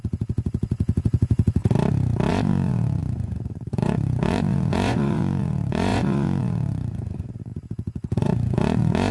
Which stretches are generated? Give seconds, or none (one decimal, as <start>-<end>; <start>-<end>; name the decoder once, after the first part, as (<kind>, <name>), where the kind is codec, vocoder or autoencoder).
0.0-1.6 (vocoder, Vocos); 2.3-9.1